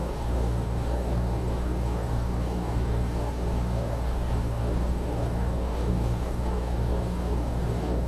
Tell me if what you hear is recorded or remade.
remade